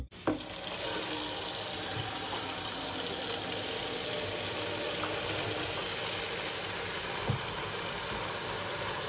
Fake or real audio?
real